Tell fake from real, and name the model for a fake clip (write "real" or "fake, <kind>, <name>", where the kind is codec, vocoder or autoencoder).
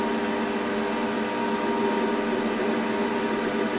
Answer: real